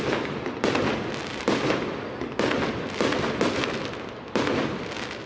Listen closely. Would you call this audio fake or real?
real